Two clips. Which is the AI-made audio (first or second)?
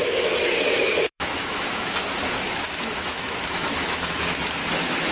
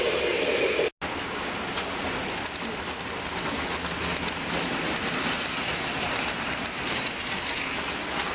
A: first